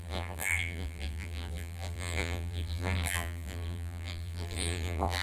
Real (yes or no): no